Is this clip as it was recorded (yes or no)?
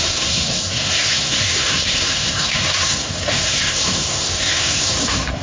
no